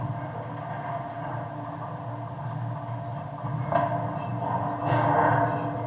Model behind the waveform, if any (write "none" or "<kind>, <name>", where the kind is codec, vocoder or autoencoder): none